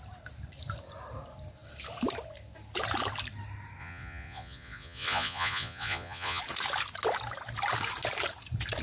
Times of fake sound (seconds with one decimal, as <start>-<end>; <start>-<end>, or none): 3.8-6.4